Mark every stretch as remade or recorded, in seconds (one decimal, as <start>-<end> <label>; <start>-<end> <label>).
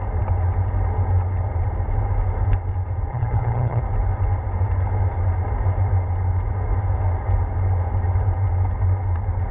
0.0-3.1 recorded; 3.1-3.8 remade; 3.8-9.5 recorded